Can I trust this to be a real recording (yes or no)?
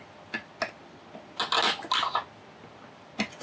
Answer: yes